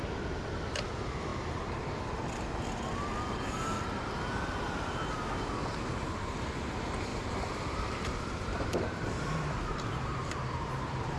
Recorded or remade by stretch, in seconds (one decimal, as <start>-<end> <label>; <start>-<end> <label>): 0.0-1.3 recorded; 1.3-1.9 remade; 1.9-7.1 recorded; 7.1-11.2 remade